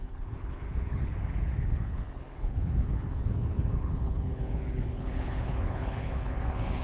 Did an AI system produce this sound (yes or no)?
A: yes